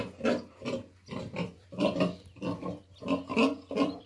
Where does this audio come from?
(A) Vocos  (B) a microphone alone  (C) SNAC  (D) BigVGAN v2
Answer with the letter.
D